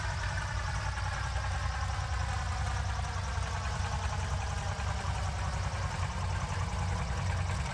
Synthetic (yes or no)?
no